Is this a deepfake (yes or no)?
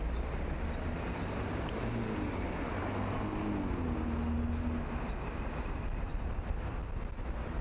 no